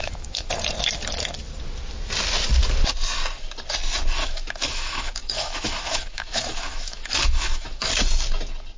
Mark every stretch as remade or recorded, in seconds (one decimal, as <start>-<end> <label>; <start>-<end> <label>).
0.0-0.5 remade; 0.5-4.2 recorded; 4.2-7.9 remade; 7.9-8.8 recorded